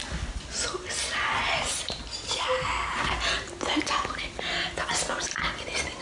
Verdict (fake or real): real